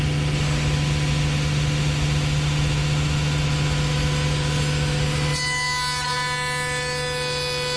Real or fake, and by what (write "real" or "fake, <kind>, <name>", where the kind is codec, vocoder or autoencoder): real